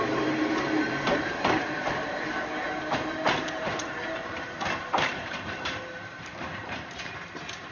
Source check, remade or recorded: remade